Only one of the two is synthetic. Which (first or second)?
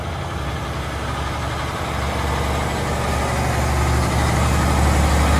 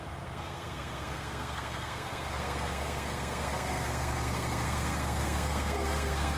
second